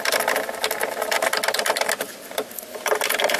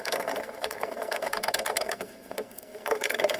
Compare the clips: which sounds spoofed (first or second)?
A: second